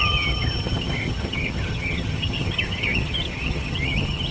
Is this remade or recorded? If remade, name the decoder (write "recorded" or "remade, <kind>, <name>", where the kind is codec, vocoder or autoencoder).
remade, vocoder, HiFi-GAN